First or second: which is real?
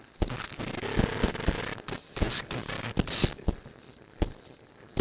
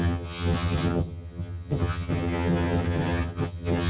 first